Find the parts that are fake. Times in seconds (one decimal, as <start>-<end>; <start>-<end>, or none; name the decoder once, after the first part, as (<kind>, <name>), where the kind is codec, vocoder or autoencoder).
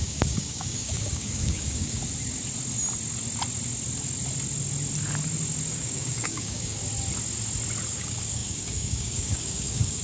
0.0-2.0 (codec, DAC); 5.7-6.8; 7.9-10.0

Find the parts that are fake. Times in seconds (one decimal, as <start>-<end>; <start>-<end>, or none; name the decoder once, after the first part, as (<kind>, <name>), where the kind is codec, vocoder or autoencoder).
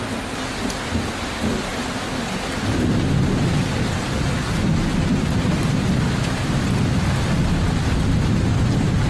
none